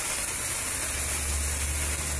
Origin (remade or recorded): recorded